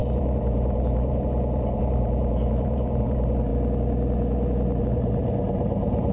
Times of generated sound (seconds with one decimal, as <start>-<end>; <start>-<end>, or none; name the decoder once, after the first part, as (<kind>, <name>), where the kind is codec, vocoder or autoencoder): 0.0-3.5 (vocoder, BigVGAN v2); 4.8-6.1